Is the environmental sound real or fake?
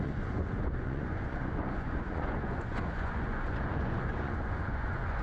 fake